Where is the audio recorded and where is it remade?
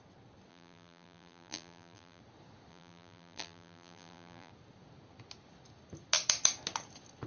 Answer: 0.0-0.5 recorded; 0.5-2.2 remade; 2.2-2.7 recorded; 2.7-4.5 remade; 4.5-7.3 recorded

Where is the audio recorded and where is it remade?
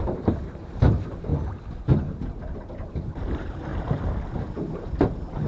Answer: 0.0-1.3 remade; 1.3-2.9 recorded; 2.9-3.7 remade; 3.7-4.3 recorded; 4.3-5.5 remade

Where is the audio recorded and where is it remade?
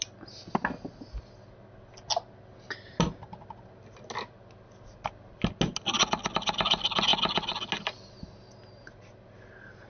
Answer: 0.0-9.9 recorded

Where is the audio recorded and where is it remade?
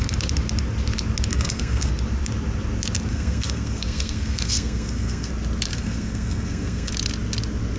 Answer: 0.0-1.3 recorded; 1.3-1.9 remade; 1.9-3.1 recorded; 3.1-5.3 remade; 5.3-5.7 recorded; 5.7-6.9 remade; 6.9-7.8 recorded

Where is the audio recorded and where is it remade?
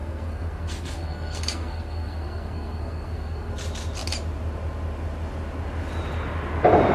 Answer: 0.0-3.5 remade; 3.5-6.9 recorded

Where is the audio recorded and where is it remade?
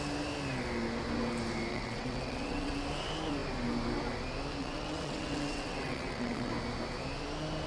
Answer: 0.0-1.7 recorded; 1.7-2.7 remade; 2.7-4.6 recorded; 4.6-6.5 remade; 6.5-7.7 recorded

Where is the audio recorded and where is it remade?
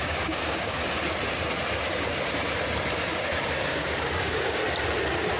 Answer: 0.0-0.8 remade; 0.8-3.6 recorded; 3.6-4.6 remade; 4.6-5.4 recorded